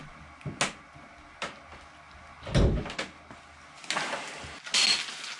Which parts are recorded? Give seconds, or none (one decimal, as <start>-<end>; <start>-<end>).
0.0-5.4